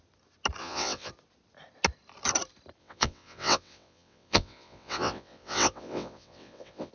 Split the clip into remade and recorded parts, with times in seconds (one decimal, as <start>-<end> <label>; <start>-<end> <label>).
0.0-0.6 recorded; 0.6-1.1 remade; 1.1-2.8 recorded; 2.8-6.9 remade